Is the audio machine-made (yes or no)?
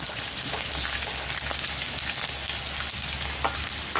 no